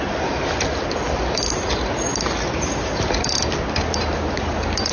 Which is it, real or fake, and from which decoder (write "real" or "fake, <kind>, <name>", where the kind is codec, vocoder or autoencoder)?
real